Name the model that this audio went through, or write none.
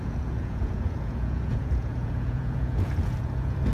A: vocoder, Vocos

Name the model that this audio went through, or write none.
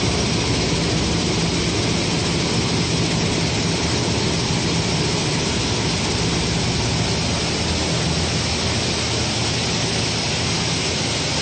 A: none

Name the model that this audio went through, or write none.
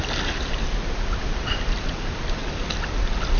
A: none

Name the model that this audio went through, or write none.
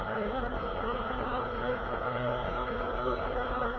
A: codec, SNAC